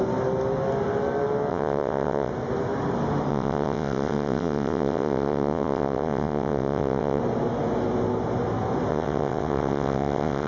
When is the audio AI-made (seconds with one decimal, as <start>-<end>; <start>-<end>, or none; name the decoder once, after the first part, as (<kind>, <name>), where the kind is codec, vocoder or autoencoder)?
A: 1.5-2.3 (vocoder, WaveNeXt); 3.3-7.2; 8.9-10.5